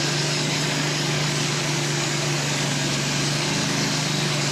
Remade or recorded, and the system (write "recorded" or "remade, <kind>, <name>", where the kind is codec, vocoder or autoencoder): remade, codec, DAC